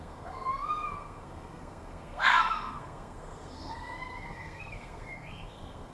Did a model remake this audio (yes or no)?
yes